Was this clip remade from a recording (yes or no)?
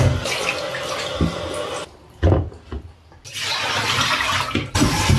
no